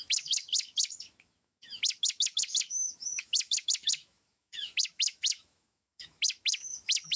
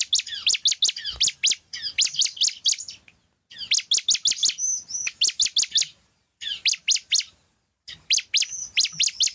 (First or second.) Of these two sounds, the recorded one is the second